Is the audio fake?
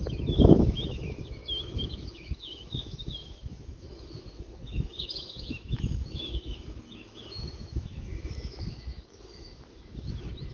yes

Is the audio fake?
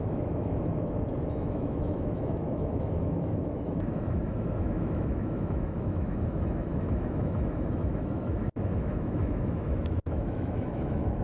yes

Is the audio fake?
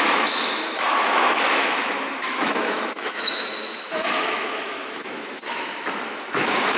yes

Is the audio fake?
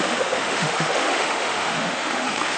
yes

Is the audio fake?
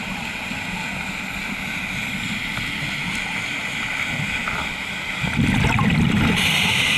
no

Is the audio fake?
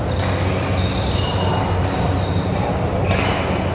no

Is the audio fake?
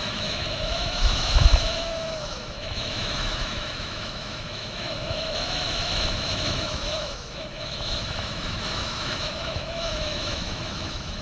yes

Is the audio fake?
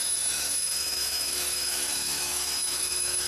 yes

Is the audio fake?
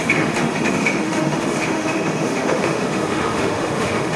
yes